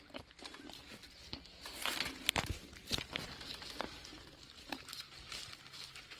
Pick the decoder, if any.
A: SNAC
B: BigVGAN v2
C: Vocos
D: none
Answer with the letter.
D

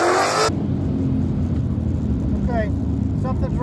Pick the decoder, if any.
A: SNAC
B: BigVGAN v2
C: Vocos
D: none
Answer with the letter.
D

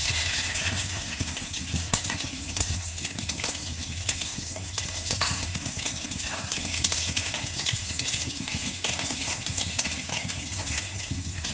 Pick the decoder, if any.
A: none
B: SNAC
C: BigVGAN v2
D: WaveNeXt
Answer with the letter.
B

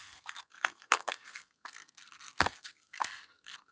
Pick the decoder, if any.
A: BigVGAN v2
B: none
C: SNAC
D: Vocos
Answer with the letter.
C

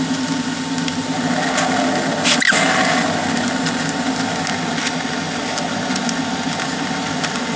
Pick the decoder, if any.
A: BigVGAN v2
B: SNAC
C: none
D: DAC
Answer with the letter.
C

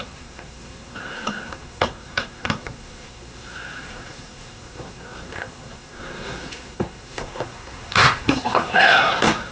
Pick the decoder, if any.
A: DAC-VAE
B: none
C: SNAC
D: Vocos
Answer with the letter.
C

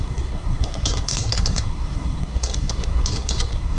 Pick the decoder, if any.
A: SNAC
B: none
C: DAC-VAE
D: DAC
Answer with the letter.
A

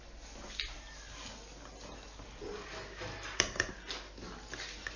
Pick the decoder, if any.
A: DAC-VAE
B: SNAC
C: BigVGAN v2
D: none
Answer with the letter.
D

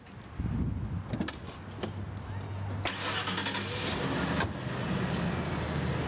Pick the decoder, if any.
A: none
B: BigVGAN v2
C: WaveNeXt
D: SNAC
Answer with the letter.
A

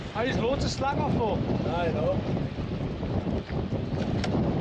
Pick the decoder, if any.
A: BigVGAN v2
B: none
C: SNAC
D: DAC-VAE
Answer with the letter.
B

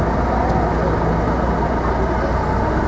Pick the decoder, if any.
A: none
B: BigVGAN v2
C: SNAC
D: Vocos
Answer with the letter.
A